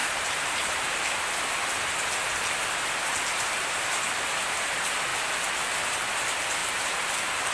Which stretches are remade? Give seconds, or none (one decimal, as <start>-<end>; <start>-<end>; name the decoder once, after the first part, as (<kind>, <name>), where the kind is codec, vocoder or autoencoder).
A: 0.0-1.4 (vocoder, BigVGAN v2); 3.1-4.1; 6.6-7.5